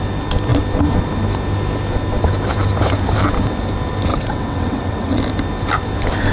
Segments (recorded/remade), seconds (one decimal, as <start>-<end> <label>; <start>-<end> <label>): 0.0-4.1 recorded; 4.1-5.2 remade; 5.2-6.3 recorded